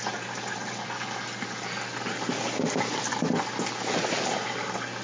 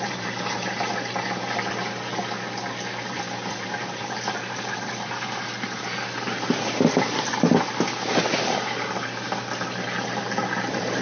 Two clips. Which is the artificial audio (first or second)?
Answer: second